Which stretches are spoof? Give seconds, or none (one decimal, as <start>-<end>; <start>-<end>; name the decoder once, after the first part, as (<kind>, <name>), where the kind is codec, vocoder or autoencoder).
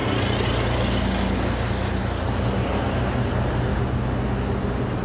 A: none